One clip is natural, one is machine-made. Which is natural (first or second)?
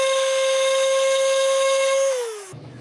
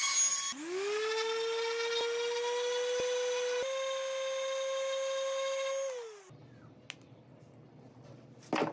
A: second